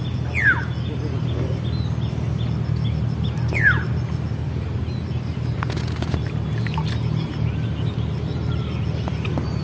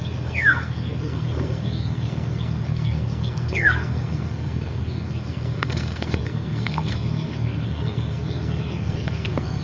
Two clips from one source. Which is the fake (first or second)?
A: second